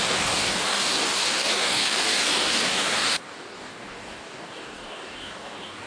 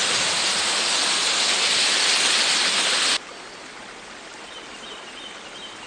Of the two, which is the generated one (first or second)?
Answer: first